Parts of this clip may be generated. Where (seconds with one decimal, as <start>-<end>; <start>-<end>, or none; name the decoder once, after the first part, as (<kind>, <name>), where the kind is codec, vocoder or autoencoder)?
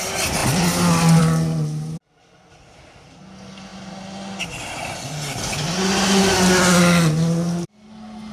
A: none